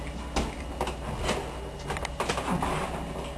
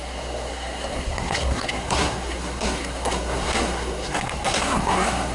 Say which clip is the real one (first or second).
first